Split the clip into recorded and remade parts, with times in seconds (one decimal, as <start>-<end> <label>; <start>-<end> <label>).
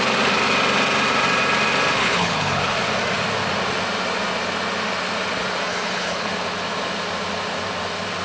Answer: 0.0-2.0 recorded; 2.0-2.6 remade; 2.6-5.7 recorded; 5.7-6.3 remade; 6.3-8.2 recorded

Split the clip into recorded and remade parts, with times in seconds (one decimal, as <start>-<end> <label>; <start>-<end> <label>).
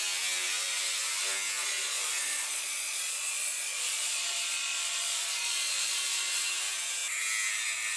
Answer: 0.0-1.6 recorded; 1.6-6.4 remade; 6.4-8.0 recorded